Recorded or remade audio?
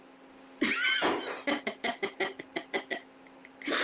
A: recorded